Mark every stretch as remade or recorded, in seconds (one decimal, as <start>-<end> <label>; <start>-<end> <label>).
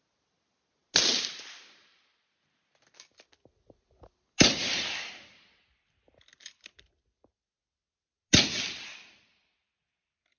0.0-10.4 recorded